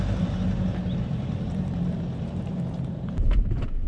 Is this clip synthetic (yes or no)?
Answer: yes